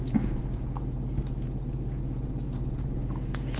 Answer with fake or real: fake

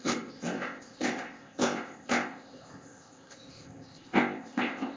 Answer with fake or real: fake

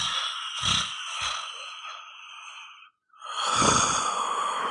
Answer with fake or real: fake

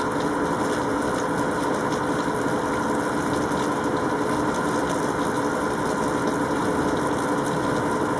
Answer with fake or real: real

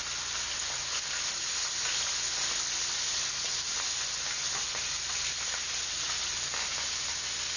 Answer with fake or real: real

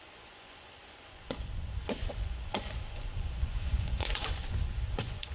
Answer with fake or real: fake